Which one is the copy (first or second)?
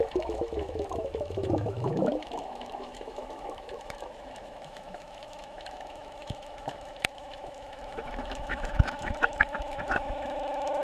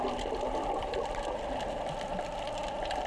first